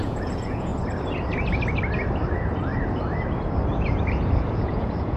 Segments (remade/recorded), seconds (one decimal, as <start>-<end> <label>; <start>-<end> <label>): 0.0-0.7 remade; 0.7-3.8 recorded; 3.8-5.2 remade